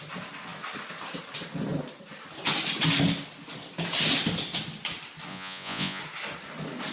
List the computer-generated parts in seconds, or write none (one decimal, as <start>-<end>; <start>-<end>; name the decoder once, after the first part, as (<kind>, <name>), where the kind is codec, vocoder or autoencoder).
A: 5.3-6.0 (vocoder, Vocos)